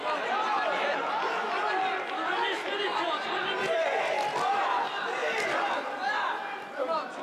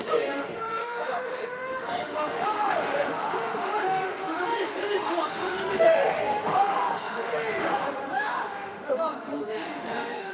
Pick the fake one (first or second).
second